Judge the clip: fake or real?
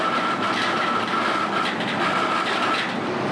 real